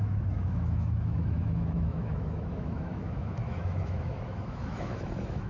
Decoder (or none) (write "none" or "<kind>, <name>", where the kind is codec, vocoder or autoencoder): autoencoder, DAC-VAE